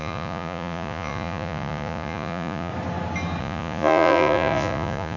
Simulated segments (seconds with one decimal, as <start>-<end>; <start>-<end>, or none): 0.0-2.7; 3.4-5.2